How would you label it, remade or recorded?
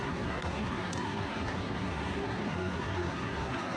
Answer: remade